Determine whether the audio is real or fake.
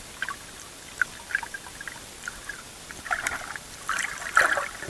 fake